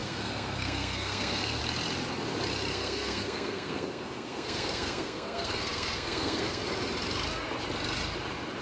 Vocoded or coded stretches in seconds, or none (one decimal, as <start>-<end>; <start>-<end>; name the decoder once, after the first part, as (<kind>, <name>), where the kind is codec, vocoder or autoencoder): 0.0-1.6 (codec, SNAC); 2.7-6.6